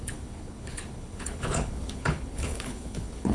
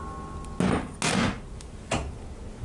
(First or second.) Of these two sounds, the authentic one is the second